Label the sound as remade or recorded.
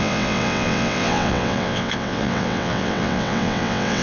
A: remade